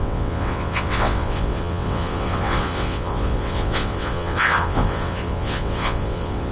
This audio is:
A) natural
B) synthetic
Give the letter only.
B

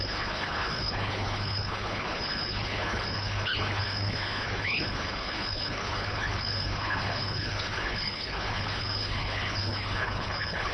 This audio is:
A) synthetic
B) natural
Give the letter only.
A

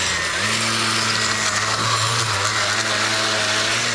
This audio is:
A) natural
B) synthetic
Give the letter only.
A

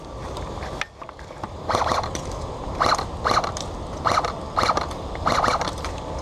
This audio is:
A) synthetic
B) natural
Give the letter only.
B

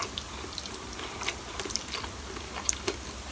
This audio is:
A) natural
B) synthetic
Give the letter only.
A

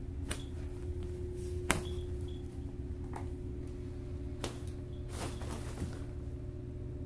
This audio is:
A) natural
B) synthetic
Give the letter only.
A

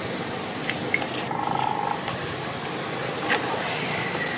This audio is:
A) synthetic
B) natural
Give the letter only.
A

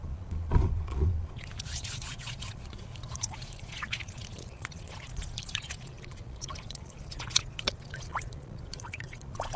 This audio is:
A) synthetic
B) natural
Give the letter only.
A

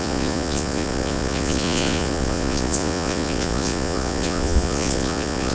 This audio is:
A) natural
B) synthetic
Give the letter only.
B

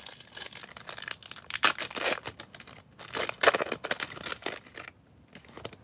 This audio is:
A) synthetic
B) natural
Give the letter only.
B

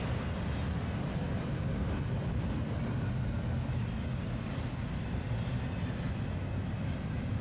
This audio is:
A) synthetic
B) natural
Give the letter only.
B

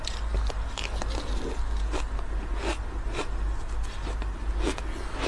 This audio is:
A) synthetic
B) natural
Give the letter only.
B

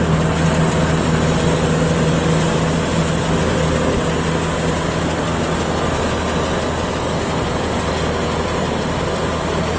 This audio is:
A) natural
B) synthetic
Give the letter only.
A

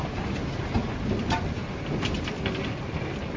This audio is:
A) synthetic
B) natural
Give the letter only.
B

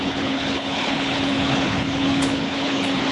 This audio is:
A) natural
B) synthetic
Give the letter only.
B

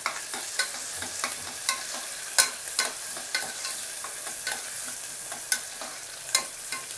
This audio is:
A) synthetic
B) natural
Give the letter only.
B